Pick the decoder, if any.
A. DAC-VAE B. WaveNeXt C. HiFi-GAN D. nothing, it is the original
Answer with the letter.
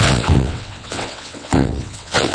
B